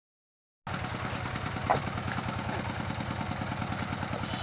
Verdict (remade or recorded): recorded